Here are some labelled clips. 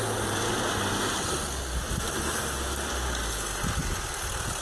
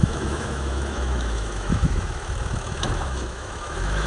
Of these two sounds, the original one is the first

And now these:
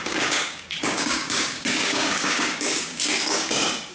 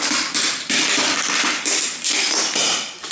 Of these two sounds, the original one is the second